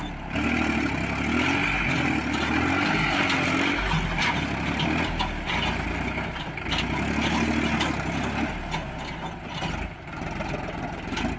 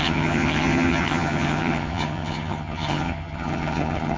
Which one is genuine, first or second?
first